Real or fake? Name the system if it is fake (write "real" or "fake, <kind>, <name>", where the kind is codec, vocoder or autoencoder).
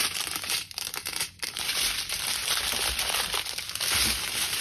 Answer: real